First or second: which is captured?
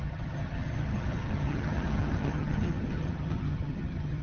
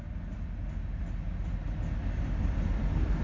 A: second